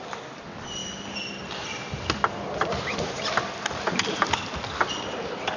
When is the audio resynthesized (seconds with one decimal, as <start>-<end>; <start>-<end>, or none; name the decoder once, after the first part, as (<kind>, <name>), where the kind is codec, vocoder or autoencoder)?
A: none